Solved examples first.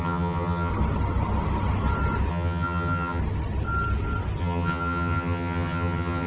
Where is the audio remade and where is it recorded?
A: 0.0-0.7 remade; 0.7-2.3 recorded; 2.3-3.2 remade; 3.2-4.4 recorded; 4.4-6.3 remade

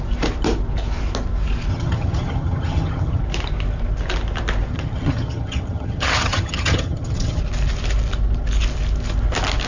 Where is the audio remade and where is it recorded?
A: 0.0-1.7 recorded; 1.7-3.2 remade; 3.2-4.7 recorded; 4.7-7.4 remade; 7.4-9.7 recorded

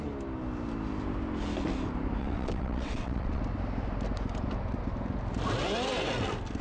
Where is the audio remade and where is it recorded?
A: 0.0-2.2 recorded; 2.2-3.4 remade; 3.4-6.6 recorded

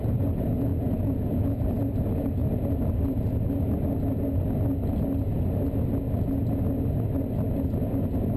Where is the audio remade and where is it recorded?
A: 0.0-0.7 recorded; 0.7-1.6 remade; 1.6-8.4 recorded